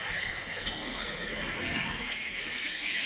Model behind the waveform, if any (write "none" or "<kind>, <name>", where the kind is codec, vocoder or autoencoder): codec, SNAC